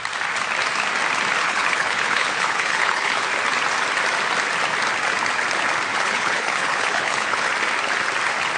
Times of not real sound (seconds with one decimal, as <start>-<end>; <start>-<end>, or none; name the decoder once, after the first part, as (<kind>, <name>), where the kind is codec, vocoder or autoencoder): 1.4-3.3 (codec, HILCodec); 5.9-7.5